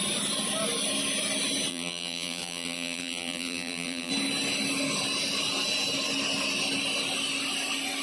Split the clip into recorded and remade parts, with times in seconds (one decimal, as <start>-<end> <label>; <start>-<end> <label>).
0.0-1.7 recorded; 1.7-4.1 remade; 4.1-8.0 recorded